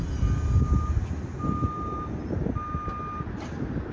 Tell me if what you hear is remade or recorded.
recorded